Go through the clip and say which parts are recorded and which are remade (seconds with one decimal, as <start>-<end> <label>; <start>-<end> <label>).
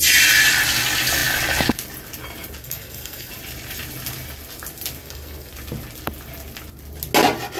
0.0-2.6 recorded; 2.6-3.3 remade; 3.3-5.0 recorded; 5.0-5.5 remade; 5.5-7.6 recorded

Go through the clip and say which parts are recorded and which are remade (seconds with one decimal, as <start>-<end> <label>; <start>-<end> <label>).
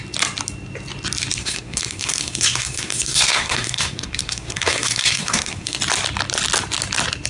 0.0-1.4 recorded; 1.4-5.8 remade; 5.8-7.3 recorded